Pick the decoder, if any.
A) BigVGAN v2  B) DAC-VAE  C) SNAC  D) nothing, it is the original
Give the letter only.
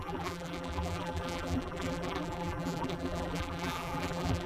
A